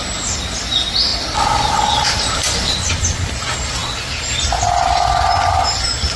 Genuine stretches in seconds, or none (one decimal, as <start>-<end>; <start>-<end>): 0.0-6.2